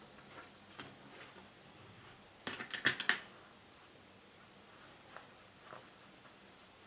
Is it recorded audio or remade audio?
recorded